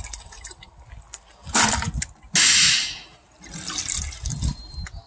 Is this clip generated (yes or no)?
no